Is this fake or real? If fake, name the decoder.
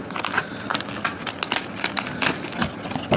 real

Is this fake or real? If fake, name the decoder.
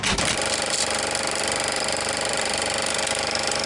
fake, vocoder, BigVGAN v2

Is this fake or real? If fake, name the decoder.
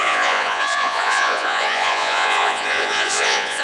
fake, vocoder, Vocos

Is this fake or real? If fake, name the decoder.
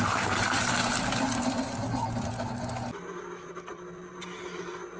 real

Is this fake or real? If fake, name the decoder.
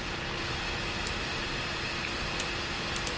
real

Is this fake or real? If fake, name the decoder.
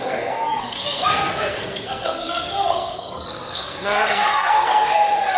fake, codec, SNAC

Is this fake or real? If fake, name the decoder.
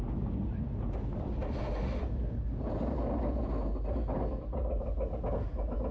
real